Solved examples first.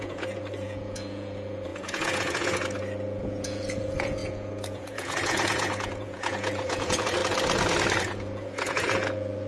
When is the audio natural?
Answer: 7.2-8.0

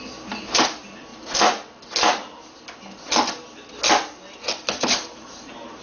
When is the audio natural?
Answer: 1.1-4.6

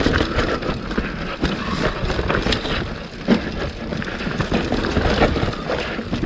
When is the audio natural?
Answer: 0.0-3.8; 4.4-6.3